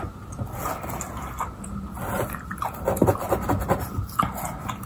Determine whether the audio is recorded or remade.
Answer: recorded